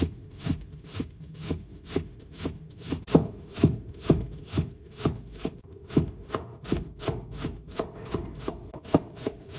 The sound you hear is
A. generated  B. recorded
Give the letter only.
A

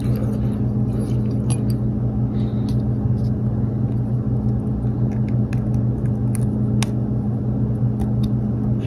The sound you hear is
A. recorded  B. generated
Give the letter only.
A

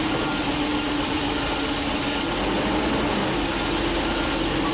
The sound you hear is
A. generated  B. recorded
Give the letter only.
B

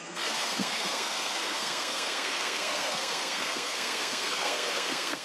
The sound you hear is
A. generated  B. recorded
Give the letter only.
A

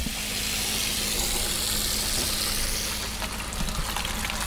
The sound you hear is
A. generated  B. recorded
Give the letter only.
B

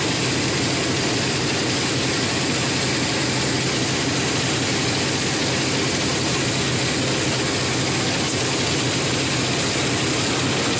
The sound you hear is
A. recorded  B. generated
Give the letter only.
A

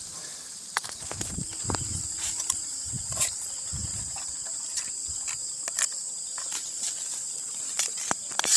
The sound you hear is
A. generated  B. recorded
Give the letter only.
A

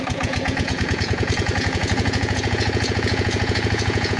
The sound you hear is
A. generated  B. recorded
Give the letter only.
A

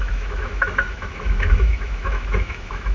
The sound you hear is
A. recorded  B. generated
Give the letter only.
B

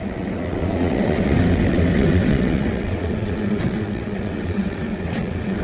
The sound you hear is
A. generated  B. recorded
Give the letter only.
A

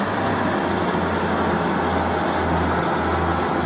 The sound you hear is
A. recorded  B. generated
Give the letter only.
A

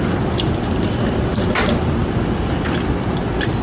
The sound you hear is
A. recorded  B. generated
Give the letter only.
A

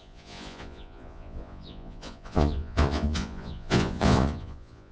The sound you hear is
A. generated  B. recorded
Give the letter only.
A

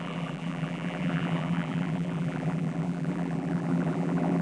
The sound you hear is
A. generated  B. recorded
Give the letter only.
A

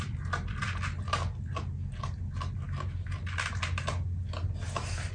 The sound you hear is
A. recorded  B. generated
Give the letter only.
A